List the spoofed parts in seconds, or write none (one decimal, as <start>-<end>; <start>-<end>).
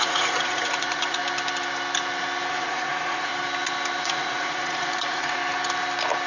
0.0-1.2; 2.5-3.3; 4.0-5.4